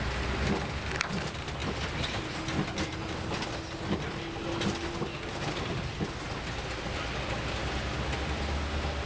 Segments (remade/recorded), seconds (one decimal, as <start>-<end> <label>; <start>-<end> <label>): 0.0-9.1 recorded